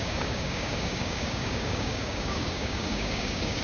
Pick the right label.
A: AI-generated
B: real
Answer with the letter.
A